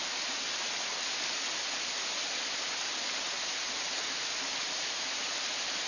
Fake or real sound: real